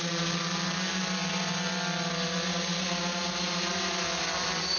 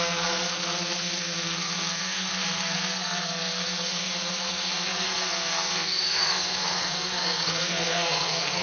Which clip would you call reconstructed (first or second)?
second